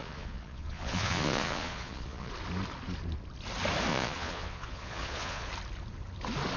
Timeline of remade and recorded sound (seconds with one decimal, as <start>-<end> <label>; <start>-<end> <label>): 0.0-2.3 remade; 2.3-3.9 recorded; 3.9-5.5 remade; 5.5-6.6 recorded